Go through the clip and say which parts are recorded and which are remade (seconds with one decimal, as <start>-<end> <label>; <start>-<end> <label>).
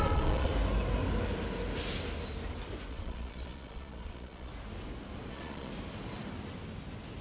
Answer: 0.0-0.5 remade; 0.5-2.9 recorded; 2.9-4.5 remade; 4.5-5.3 recorded; 5.3-5.7 remade; 5.7-7.2 recorded